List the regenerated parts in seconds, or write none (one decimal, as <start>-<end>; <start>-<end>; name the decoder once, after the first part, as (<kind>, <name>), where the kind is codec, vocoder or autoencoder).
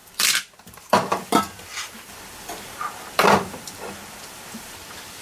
0.0-5.2 (vocoder, BigVGAN v2)